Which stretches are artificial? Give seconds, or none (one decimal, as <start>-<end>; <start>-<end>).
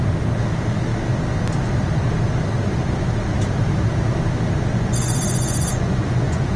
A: 4.7-6.6